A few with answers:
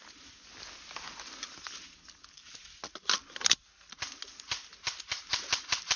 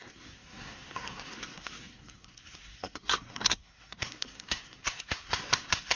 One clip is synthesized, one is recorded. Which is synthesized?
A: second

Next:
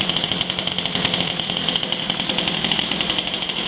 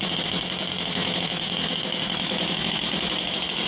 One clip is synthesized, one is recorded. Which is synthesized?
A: second